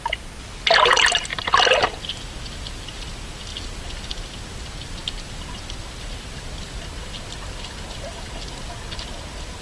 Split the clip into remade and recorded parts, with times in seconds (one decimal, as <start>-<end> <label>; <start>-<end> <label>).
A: 0.0-9.6 recorded

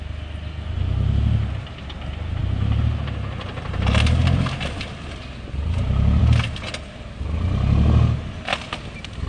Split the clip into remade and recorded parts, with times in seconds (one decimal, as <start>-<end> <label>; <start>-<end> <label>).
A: 0.0-9.3 recorded

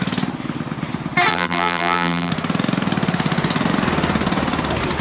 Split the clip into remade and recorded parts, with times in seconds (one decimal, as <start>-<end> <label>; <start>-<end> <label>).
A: 0.0-1.3 recorded; 1.3-2.3 remade; 2.3-5.0 recorded

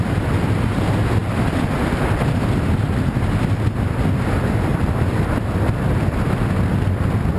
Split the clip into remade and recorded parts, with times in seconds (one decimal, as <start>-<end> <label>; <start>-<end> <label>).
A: 0.0-1.2 recorded; 1.2-3.1 remade; 3.1-4.7 recorded; 4.7-6.6 remade; 6.6-7.4 recorded

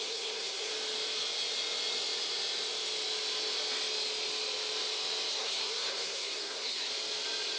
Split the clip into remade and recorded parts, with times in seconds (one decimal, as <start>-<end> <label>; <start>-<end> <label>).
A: 0.0-0.7 remade; 0.7-5.3 recorded; 5.3-6.9 remade; 6.9-7.6 recorded

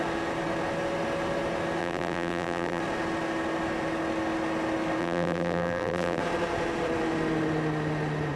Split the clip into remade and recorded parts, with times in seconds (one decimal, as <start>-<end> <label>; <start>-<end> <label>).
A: 0.0-1.8 recorded; 1.8-2.8 remade; 2.8-5.0 recorded; 5.0-6.2 remade; 6.2-8.4 recorded